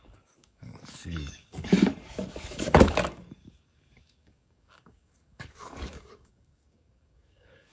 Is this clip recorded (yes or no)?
no